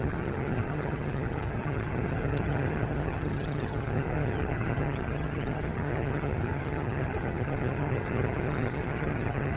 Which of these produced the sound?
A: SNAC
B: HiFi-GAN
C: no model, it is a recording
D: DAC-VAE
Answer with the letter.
B